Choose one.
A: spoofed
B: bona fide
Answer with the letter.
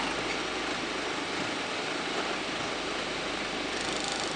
B